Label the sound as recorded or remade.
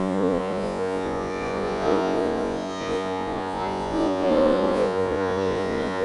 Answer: remade